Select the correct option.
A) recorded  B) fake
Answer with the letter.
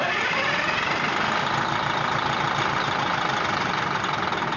A